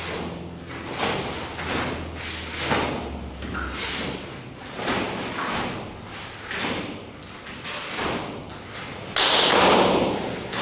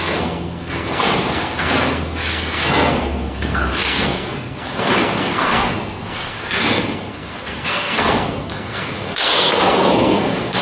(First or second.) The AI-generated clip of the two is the second